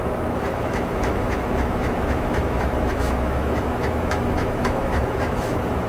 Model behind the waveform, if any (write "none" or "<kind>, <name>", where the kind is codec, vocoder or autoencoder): autoencoder, DAC-VAE